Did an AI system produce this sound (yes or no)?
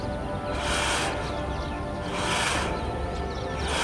no